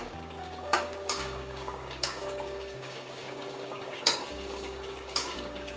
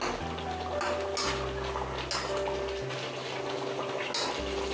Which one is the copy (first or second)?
first